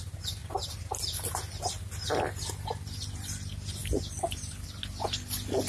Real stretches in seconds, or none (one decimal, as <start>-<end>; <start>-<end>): 0.0-5.7

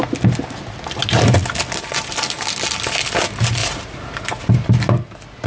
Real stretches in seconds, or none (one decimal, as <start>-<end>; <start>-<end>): 0.0-3.6; 4.4-5.5

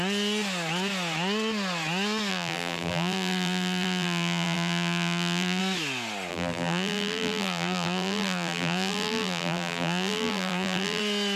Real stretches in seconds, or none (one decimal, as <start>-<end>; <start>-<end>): 0.0-2.3; 5.6-6.3; 11.0-11.4

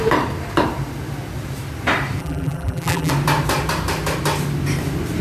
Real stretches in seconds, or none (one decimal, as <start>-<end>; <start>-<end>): 0.0-2.2; 3.1-5.2

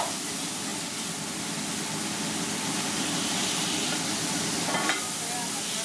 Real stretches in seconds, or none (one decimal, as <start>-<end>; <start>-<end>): 0.0-0.7; 1.7-5.8

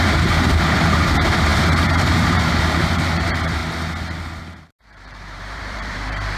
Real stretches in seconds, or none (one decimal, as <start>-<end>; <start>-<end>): 3.6-4.4

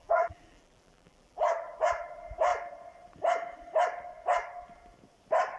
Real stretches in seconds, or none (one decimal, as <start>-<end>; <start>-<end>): 2.5-5.6